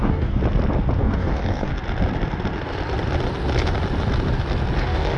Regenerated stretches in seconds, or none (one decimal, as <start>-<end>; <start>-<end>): 0.0-0.4; 1.0-1.7; 4.8-5.2